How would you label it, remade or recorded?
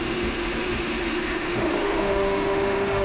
remade